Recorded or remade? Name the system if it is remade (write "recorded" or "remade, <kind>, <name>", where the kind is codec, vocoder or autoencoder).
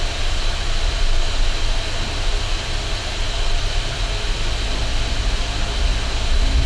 recorded